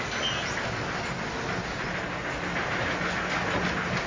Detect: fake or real real